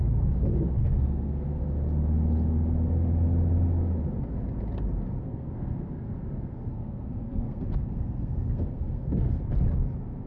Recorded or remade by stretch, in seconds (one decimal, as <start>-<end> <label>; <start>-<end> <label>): 0.0-0.8 recorded; 0.8-1.6 remade; 1.6-5.2 recorded; 5.2-9.5 remade; 9.5-10.3 recorded